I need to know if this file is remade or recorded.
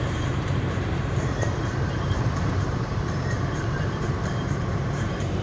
remade